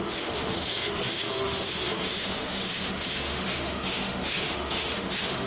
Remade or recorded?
remade